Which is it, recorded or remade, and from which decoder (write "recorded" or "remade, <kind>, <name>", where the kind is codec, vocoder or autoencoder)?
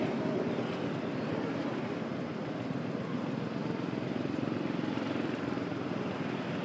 recorded